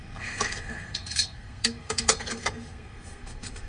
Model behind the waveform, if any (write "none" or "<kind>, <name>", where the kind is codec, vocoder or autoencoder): codec, SNAC